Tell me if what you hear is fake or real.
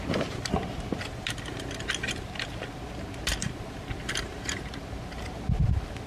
real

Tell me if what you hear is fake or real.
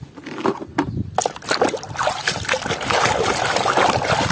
real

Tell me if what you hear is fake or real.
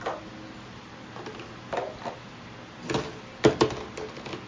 real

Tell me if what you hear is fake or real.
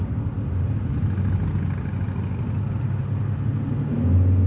real